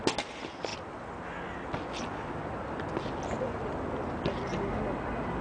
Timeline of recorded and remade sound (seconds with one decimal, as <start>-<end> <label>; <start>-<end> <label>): 0.0-5.4 recorded